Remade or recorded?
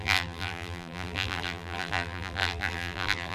remade